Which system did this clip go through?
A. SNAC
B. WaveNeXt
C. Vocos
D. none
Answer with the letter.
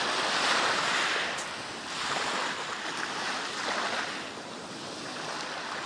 D